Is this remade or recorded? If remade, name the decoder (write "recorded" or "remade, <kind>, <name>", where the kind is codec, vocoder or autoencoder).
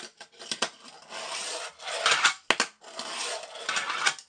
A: recorded